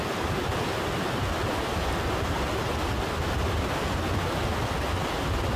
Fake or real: real